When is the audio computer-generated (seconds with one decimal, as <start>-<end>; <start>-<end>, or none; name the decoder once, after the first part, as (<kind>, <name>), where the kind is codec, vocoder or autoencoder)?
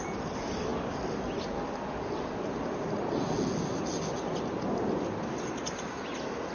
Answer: none